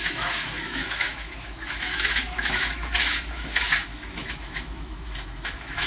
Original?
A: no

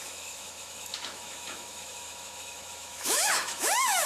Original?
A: no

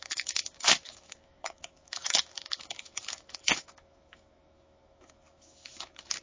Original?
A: no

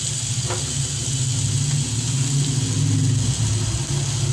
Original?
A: yes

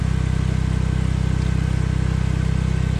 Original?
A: yes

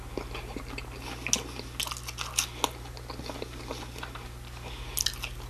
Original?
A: yes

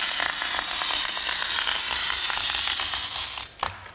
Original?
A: yes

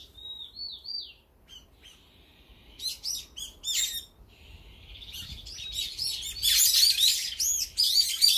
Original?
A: yes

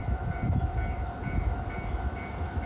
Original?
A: no